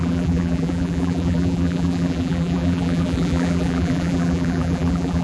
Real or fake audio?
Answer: fake